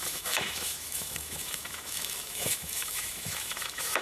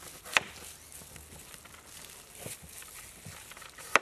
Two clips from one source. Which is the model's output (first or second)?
first